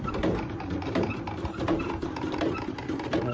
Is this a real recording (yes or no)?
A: no